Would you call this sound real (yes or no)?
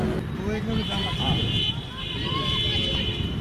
yes